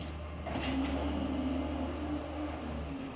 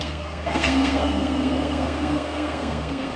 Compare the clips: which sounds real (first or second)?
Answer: first